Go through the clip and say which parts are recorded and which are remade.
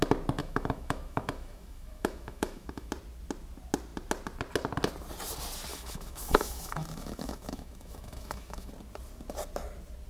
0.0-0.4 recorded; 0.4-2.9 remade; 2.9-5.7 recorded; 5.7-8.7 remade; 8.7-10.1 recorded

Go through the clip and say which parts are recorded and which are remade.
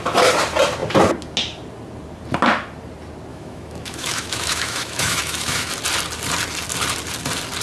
0.0-3.3 recorded; 3.3-5.7 remade; 5.7-7.6 recorded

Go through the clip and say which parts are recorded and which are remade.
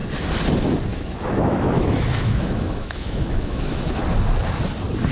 0.0-0.9 recorded; 0.9-4.0 remade; 4.0-5.1 recorded